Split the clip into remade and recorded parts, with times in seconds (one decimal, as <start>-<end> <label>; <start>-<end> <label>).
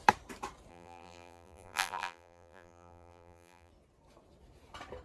0.0-0.7 recorded; 0.7-3.7 remade; 3.7-5.0 recorded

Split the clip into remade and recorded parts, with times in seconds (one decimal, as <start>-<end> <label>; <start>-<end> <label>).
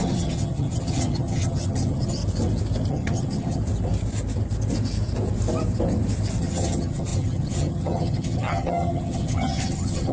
0.0-2.2 remade; 2.2-2.9 recorded; 2.9-3.6 remade; 3.6-6.4 recorded; 6.4-10.1 remade